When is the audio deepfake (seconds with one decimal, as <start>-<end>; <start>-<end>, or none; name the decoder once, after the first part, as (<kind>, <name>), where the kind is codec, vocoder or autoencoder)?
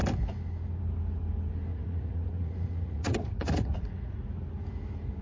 1.7-4.3 (vocoder, Vocos)